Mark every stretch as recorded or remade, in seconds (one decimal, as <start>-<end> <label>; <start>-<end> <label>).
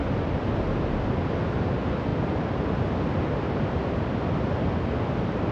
0.0-5.5 recorded